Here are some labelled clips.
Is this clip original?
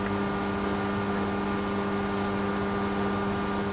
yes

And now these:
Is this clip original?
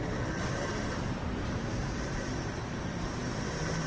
no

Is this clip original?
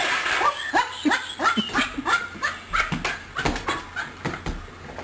yes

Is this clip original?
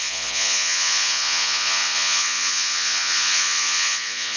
no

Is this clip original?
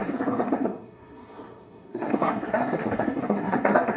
no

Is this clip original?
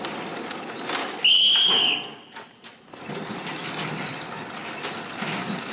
yes